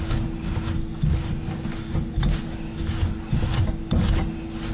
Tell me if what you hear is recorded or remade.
recorded